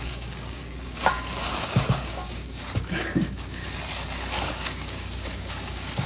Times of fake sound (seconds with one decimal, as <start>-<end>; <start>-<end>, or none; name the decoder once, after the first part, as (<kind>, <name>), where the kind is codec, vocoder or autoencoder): 0.0-3.6 (codec, DAC); 4.4-6.1